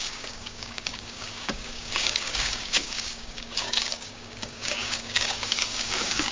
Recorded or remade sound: remade